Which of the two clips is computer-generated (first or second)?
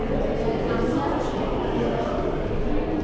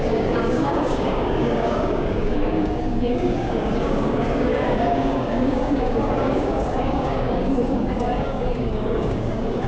second